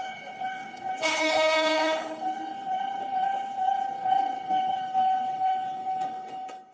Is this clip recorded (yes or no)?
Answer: no